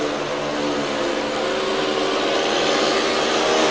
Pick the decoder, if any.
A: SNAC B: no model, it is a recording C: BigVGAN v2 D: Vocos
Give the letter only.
B